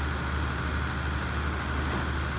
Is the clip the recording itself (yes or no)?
yes